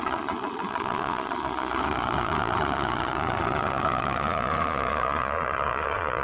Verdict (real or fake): fake